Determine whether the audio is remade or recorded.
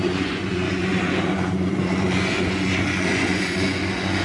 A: remade